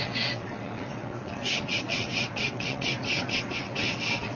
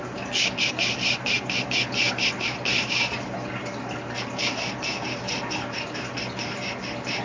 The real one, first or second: second